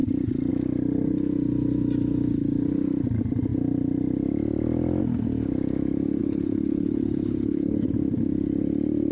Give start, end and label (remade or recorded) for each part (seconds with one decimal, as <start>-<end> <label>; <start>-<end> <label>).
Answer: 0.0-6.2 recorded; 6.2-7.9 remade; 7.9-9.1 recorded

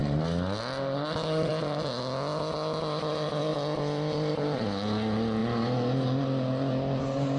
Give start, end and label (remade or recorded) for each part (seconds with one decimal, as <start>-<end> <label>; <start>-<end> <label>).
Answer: 0.0-7.4 recorded

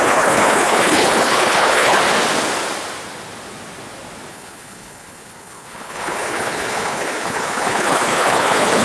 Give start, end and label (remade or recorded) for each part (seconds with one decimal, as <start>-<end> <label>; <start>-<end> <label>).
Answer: 0.0-2.0 remade; 2.0-4.3 recorded; 4.3-8.8 remade